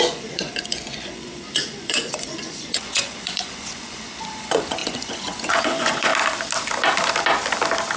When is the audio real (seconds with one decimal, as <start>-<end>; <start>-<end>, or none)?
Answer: 6.1-8.0

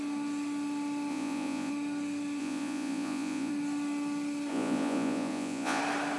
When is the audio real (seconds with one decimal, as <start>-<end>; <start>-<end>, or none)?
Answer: 0.0-1.1; 1.7-2.4; 3.5-4.5; 5.8-6.2